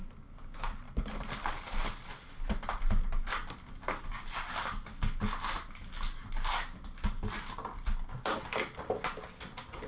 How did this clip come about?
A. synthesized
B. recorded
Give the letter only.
B